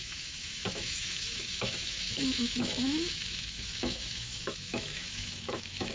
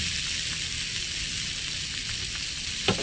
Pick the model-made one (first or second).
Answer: first